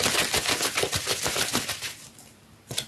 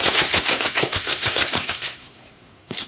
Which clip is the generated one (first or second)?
second